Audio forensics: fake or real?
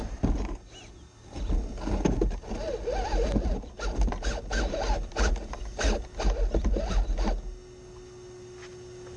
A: real